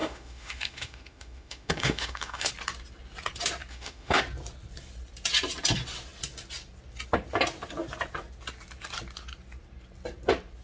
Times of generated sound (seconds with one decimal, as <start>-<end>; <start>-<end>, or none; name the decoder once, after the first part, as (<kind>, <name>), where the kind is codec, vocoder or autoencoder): 0.0-2.5 (autoencoder, DAC-VAE); 3.7-4.2